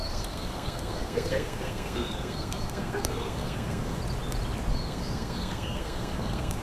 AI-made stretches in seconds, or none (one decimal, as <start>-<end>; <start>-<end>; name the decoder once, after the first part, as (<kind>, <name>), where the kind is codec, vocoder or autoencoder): 0.0-4.0 (codec, SNAC); 4.7-6.6